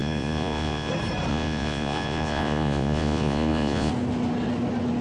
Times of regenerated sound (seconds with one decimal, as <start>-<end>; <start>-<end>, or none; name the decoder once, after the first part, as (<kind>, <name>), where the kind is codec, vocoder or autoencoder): 0.0-0.9 (vocoder, Vocos); 1.3-3.9